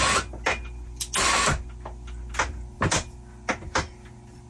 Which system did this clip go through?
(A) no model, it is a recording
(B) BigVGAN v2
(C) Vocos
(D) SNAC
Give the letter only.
A